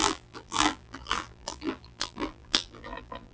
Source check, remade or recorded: remade